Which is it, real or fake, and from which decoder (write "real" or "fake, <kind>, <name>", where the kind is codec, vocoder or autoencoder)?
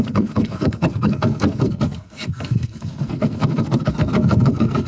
fake, codec, SNAC